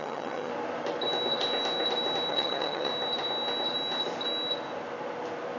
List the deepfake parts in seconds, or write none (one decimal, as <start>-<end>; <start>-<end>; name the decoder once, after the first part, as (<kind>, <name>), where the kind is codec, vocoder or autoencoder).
0.0-0.5 (vocoder, HiFi-GAN); 2.3-2.9